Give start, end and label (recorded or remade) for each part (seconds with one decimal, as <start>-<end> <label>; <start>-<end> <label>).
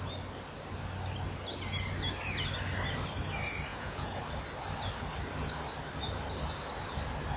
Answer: 0.0-3.7 recorded; 3.7-4.2 remade; 4.2-7.4 recorded